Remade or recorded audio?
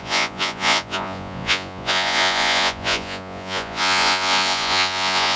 remade